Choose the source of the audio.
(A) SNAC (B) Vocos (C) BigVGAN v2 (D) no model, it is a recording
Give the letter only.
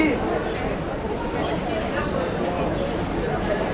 D